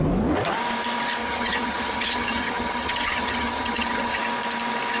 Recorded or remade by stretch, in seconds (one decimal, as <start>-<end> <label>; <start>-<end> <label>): 0.0-1.2 recorded; 1.2-4.2 remade; 4.2-5.0 recorded